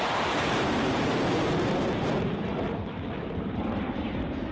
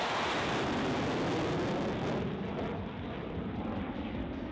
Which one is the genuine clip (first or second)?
second